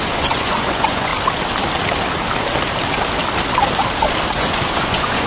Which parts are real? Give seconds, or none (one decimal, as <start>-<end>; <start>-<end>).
1.1-4.3

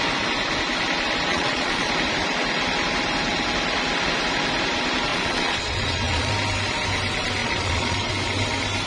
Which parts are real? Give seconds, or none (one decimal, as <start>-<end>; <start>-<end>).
0.0-1.3; 1.9-5.1; 6.3-7.4; 8.1-8.9

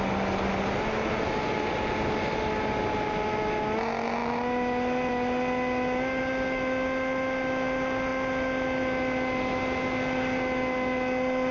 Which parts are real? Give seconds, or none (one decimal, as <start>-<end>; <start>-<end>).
0.0-11.5